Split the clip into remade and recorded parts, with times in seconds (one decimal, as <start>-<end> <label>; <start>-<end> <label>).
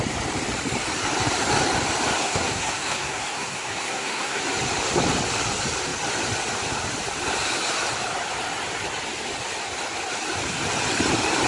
0.0-2.2 recorded; 2.2-4.4 remade; 4.4-11.5 recorded